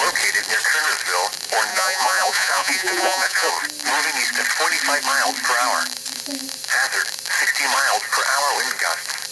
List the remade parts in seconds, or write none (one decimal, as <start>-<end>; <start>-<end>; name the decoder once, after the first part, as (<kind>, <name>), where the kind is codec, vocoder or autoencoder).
1.7-3.5 (vocoder, Vocos)